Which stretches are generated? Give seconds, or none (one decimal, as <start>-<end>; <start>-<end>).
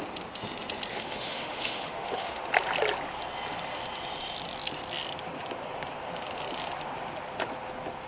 0.9-2.4